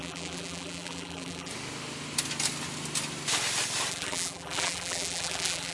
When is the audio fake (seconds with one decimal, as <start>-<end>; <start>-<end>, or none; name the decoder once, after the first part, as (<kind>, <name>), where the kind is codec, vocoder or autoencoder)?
0.0-1.5 (vocoder, BigVGAN v2); 3.9-5.7